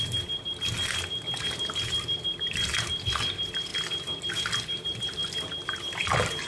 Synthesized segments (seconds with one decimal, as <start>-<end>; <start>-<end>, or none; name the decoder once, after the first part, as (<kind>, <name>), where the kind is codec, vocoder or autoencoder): none